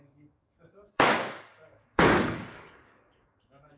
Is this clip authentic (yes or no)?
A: no